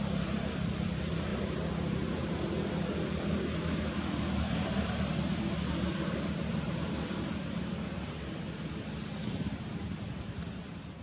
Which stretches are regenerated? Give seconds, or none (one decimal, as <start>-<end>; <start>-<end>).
0.0-1.3; 3.8-11.0